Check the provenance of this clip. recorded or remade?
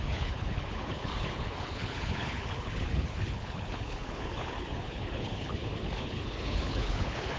remade